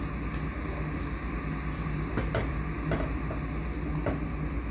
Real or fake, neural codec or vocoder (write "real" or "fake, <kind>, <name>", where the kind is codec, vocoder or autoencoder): real